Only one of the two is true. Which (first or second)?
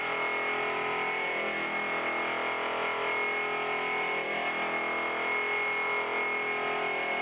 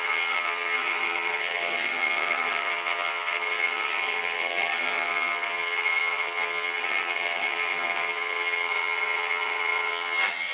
first